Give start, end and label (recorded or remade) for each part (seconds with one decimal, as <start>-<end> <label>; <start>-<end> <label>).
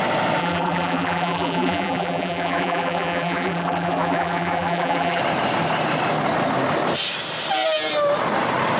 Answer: 0.0-0.4 recorded; 0.4-5.2 remade; 5.2-8.8 recorded